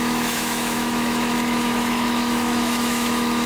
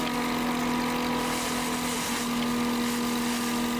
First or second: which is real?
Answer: second